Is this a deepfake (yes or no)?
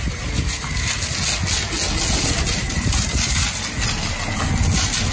no